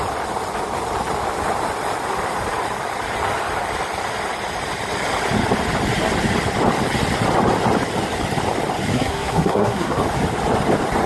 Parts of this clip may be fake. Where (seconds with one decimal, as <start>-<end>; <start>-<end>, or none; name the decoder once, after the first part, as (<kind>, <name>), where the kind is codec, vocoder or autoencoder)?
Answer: 8.9-10.0 (codec, SNAC)